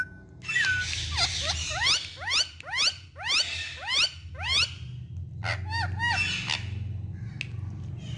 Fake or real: real